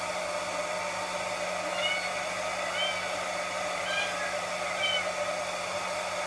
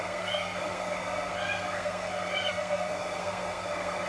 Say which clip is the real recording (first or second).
first